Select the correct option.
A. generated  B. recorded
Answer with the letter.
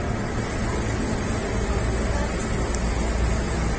B